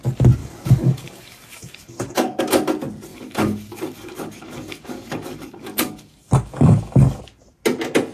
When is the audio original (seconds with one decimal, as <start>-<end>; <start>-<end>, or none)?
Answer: 0.0-0.4; 2.4-3.1; 7.2-8.1